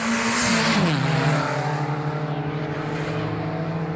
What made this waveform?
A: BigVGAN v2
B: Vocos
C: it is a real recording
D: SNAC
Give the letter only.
C